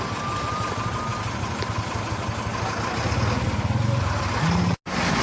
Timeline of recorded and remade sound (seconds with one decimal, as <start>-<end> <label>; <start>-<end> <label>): 0.0-5.2 recorded